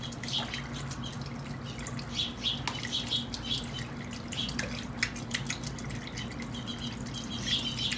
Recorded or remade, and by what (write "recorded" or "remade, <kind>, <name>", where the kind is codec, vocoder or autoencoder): recorded